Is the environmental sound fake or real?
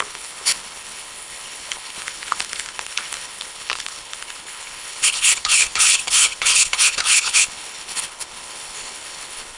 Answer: fake